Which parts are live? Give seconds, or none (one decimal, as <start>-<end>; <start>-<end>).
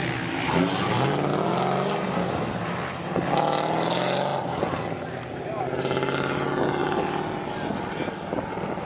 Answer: 0.0-8.8